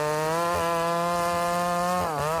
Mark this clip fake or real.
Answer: real